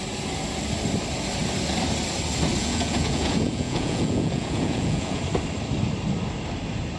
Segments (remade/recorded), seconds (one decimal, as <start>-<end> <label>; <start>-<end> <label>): 0.0-2.6 recorded; 2.6-5.2 remade; 5.2-7.0 recorded